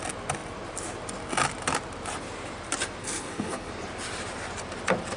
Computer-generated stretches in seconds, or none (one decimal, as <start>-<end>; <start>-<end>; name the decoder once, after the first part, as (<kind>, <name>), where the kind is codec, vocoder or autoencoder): 3.0-3.7 (codec, SNAC)

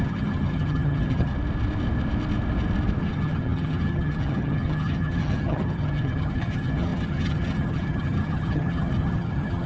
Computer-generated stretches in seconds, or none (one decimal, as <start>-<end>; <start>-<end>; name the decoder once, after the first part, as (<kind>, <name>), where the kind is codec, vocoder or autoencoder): 0.0-1.3 (vocoder, HiFi-GAN); 3.0-9.7